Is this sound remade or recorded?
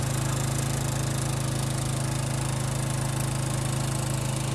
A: recorded